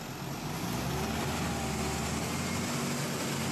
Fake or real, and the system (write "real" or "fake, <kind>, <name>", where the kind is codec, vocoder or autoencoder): real